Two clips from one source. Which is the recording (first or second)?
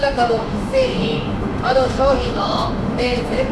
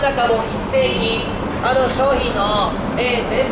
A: second